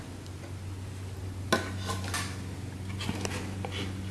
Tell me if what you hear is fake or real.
real